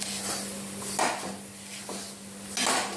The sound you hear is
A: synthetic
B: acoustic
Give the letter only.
B